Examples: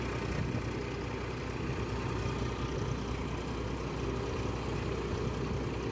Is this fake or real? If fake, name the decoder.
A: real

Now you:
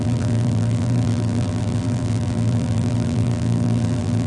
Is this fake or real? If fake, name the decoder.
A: fake, vocoder, BigVGAN v2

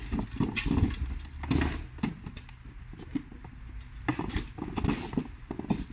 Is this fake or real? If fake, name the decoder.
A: real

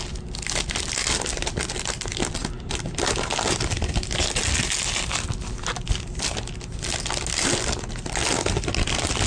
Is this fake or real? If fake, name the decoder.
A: real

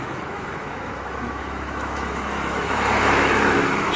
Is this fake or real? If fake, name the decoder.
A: fake, autoencoder, DAC-VAE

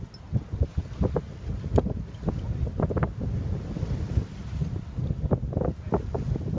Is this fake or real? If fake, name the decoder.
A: real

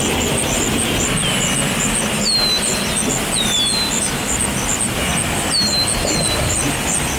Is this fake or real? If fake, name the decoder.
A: real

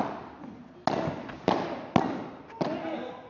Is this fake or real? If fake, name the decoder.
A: real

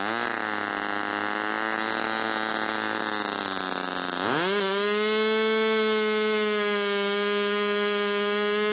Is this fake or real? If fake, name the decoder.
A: real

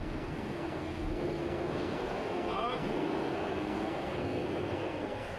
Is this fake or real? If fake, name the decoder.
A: fake, codec, SNAC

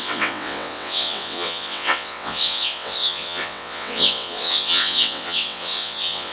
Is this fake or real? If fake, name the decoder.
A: fake, vocoder, WaveNeXt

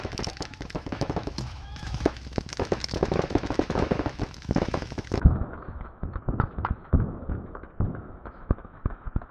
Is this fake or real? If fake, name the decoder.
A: fake, autoencoder, DAC-VAE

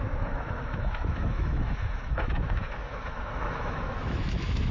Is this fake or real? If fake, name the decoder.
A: fake, autoencoder, DAC-VAE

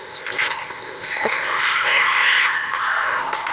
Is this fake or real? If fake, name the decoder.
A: fake, codec, ZipCodec